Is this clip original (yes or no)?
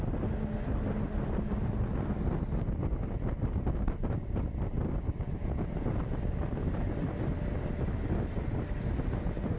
yes